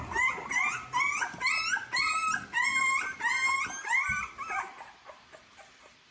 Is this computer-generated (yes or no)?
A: no